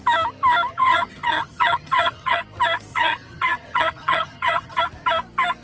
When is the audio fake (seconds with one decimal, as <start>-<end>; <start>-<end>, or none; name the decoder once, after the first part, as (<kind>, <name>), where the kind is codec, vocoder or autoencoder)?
0.7-2.4 (vocoder, HiFi-GAN); 2.9-4.8